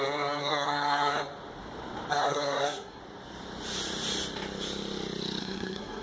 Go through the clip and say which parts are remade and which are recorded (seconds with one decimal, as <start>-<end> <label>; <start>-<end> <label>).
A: 0.0-1.2 remade; 1.2-2.1 recorded; 2.1-3.0 remade; 3.0-5.4 recorded; 5.4-6.0 remade